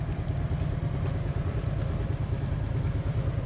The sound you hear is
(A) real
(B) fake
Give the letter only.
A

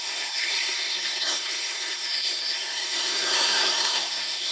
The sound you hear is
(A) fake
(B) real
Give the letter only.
A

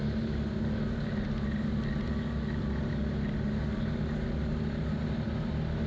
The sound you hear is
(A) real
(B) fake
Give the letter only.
A